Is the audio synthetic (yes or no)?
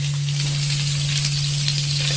no